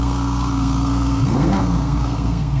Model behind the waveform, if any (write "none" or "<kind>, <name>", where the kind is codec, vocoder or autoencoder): codec, SNAC